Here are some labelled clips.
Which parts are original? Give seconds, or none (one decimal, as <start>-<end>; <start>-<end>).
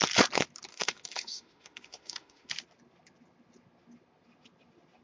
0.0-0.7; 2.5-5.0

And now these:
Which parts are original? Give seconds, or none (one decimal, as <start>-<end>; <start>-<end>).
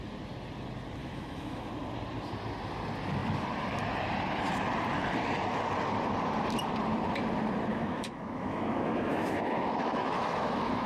0.0-1.0; 1.7-7.7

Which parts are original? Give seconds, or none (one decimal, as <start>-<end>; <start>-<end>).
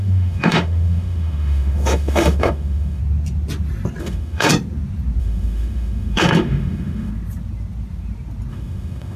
3.0-4.0; 4.5-5.2; 7.1-8.5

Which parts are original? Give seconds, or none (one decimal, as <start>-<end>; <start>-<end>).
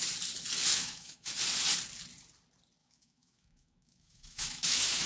0.0-0.7; 1.3-2.8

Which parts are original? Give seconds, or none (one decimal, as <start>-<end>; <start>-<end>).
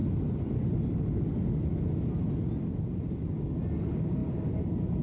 0.0-5.0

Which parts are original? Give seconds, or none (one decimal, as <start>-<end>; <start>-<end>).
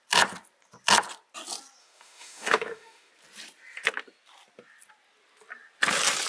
0.0-1.8; 3.1-6.3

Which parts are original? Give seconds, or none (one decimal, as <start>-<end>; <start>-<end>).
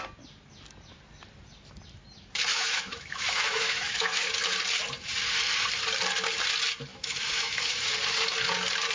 0.0-2.5; 4.3-6.9; 7.8-8.9